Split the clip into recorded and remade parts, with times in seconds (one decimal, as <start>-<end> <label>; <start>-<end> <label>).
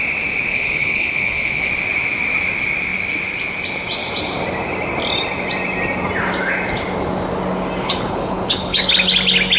0.0-0.5 recorded; 0.5-1.7 remade; 1.7-7.8 recorded; 7.8-8.8 remade; 8.8-9.6 recorded